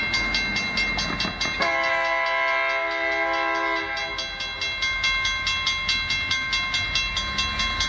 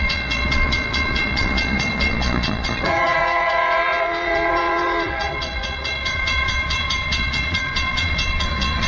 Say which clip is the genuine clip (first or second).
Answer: first